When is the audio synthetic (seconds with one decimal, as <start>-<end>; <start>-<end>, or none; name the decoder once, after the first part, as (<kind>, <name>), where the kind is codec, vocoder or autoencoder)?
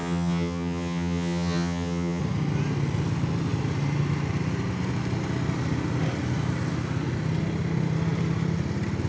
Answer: 0.0-2.2 (vocoder, HiFi-GAN)